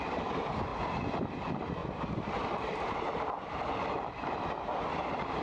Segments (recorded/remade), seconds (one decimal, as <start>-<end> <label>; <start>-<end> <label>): 0.0-0.7 remade; 0.7-1.2 recorded; 1.2-5.4 remade